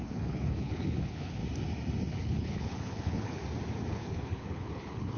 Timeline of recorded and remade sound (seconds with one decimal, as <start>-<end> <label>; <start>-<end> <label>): 0.0-1.4 remade; 1.4-2.1 recorded; 2.1-3.4 remade; 3.4-3.9 recorded; 3.9-5.2 remade